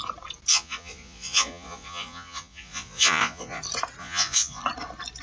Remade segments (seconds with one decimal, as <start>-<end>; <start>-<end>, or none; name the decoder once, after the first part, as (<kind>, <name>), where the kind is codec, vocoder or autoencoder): 0.5-3.6 (vocoder, Vocos); 4.0-4.6